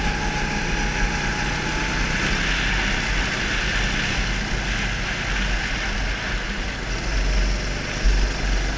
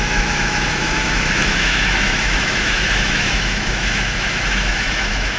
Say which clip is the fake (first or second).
second